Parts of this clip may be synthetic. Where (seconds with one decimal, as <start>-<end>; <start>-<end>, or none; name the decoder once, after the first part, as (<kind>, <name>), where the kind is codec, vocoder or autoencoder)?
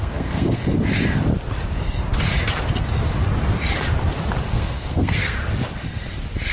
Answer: 0.0-0.6 (codec, SNAC); 4.5-5.4